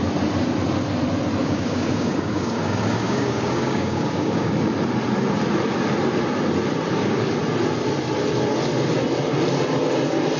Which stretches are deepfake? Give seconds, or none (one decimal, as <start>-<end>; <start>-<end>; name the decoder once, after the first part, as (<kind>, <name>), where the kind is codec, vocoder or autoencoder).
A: 1.4-4.5 (codec, DAC)